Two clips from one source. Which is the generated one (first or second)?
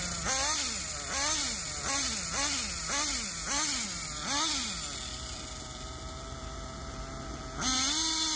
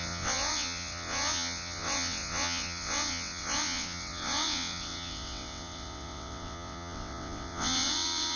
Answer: second